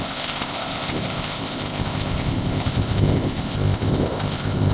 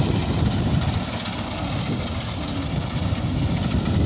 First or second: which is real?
second